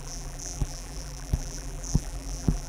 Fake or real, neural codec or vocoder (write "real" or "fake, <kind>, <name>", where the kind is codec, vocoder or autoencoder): fake, vocoder, BigVGAN v2